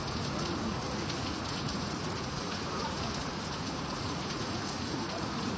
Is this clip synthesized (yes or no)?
yes